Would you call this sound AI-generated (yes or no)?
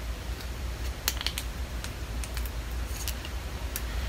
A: no